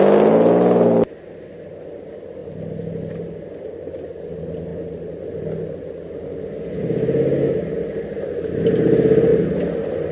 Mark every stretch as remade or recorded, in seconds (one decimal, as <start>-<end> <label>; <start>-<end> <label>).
0.0-10.1 recorded